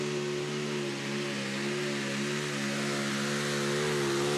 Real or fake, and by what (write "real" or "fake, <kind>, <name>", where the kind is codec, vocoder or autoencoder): real